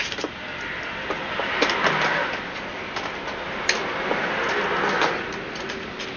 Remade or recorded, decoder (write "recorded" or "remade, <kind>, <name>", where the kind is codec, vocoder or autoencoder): recorded